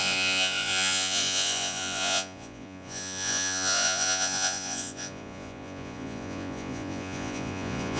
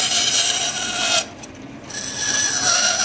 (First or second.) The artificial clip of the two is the first